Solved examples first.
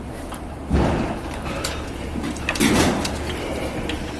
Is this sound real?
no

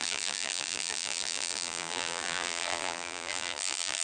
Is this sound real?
no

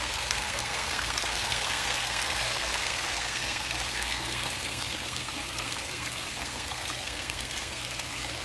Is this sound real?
no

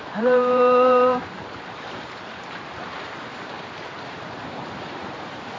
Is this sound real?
no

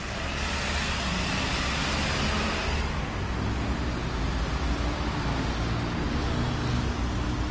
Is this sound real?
yes